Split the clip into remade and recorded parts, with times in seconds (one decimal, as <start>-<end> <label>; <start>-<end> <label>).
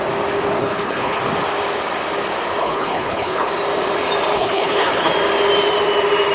0.0-0.6 recorded; 0.6-1.2 remade; 1.2-2.6 recorded; 2.6-3.5 remade; 3.5-4.3 recorded; 4.3-5.1 remade; 5.1-6.3 recorded